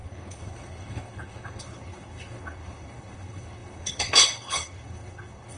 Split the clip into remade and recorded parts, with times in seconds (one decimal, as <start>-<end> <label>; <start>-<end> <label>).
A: 0.0-5.6 remade